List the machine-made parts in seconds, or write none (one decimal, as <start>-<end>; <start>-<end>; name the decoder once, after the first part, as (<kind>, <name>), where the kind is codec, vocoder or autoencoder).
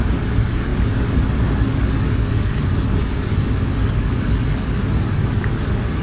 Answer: 0.0-6.0 (codec, DAC)